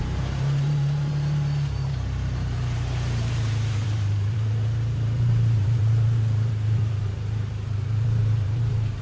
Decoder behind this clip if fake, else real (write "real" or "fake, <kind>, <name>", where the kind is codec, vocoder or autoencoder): fake, vocoder, BigVGAN v2